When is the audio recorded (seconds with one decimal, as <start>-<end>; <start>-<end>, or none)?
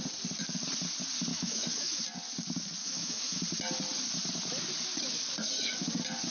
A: 0.0-1.3; 2.0-2.8; 3.4-6.3